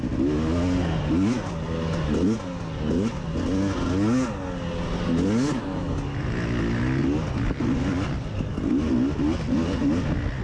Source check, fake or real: real